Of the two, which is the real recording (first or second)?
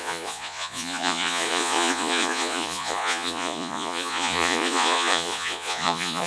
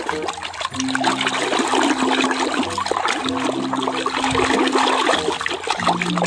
second